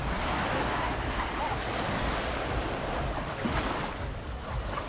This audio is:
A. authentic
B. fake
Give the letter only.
A